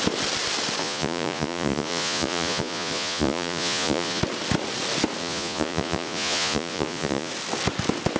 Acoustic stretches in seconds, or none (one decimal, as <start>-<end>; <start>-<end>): 0.0-0.8; 4.2-5.2; 7.3-8.2